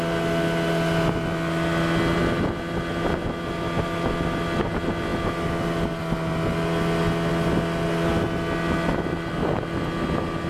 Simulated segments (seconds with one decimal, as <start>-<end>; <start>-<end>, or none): none